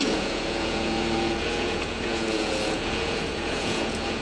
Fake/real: fake